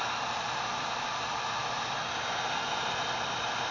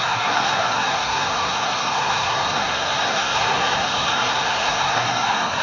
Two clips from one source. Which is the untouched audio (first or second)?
first